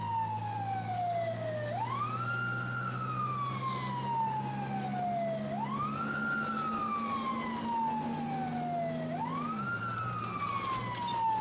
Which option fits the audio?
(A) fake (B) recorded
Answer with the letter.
B